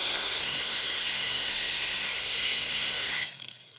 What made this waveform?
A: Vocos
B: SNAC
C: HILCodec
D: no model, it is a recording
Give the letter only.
B